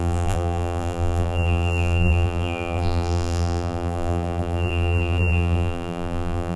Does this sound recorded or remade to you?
remade